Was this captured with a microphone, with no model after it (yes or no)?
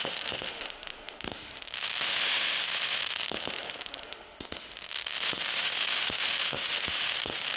no